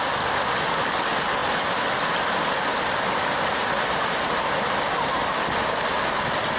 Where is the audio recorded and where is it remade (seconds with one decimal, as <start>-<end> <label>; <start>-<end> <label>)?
0.0-6.6 recorded